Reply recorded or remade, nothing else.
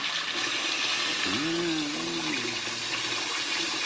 recorded